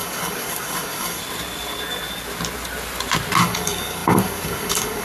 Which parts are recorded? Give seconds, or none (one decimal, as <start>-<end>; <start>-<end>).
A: 1.2-3.4

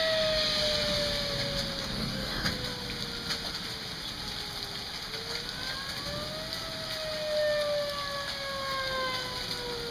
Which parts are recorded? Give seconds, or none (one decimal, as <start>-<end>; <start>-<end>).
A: 0.0-1.8; 2.5-9.9

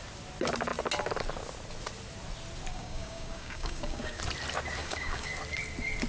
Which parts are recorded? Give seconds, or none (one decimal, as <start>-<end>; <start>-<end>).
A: 0.0-2.7; 4.2-4.8; 5.3-6.1

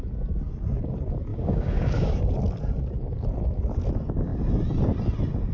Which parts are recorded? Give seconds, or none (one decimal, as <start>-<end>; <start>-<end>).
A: 0.0-1.3; 2.3-5.5

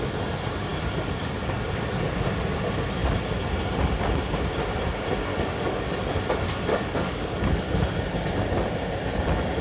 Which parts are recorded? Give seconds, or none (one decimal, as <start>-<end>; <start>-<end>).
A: 0.0-5.3; 6.1-6.7; 7.6-9.6

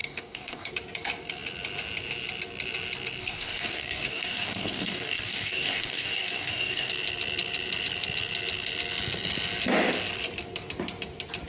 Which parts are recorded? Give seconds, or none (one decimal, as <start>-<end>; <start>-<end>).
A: 0.7-3.2; 6.9-11.5